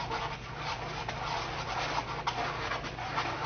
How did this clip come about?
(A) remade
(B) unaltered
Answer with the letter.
B